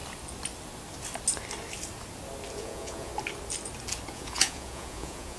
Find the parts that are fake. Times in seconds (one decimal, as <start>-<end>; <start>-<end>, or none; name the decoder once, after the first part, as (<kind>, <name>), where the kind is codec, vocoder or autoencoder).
2.6-3.1 (vocoder, Vocos); 4.1-5.4